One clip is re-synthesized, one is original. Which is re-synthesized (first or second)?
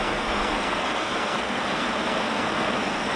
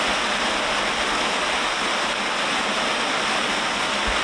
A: first